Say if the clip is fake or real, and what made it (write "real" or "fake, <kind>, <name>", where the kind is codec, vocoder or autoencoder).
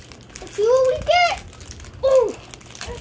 real